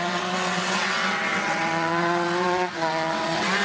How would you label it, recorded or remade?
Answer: remade